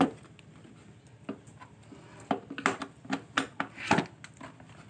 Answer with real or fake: real